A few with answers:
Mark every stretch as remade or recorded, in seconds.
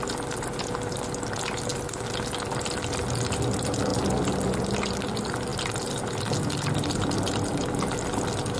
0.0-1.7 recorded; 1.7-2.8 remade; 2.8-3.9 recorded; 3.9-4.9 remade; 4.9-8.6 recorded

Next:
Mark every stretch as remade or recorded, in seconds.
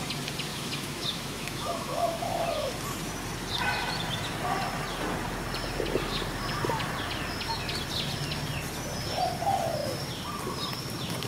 0.0-0.5 recorded; 0.5-2.7 remade; 2.7-11.3 recorded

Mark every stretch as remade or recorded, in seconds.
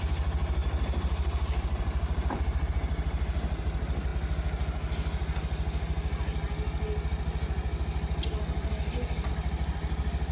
0.0-0.6 recorded; 0.6-2.7 remade; 2.7-10.3 recorded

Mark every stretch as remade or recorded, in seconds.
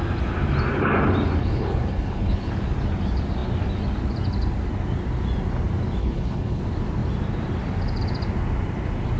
0.0-1.4 recorded; 1.4-2.5 remade; 2.5-6.0 recorded; 6.0-6.6 remade; 6.6-9.2 recorded